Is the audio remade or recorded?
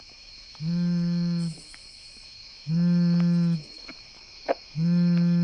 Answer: remade